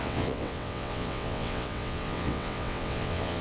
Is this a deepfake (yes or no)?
yes